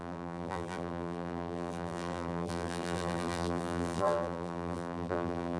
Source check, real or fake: fake